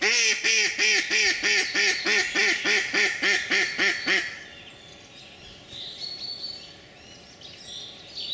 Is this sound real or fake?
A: real